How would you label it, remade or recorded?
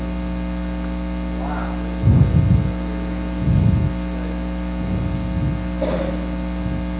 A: recorded